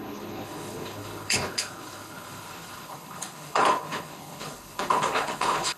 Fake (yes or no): yes